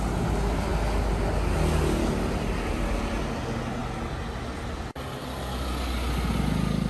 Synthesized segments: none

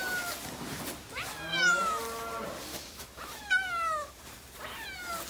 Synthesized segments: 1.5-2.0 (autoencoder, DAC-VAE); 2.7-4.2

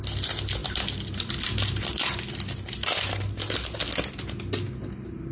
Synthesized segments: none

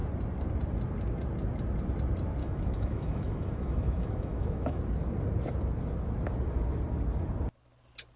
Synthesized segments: 2.4-4.8 (autoencoder, DAC-VAE)

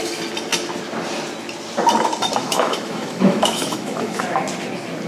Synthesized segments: 2.4-4.2 (autoencoder, DAC-VAE)

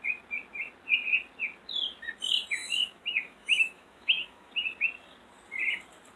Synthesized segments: 2.6-4.5 (autoencoder, DAC-VAE)